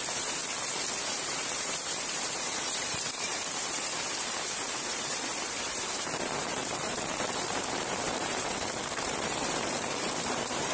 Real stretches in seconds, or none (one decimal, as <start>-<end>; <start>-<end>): 0.4-1.1